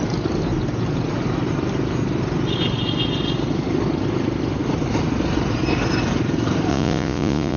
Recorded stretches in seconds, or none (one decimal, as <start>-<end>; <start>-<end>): 0.0-6.7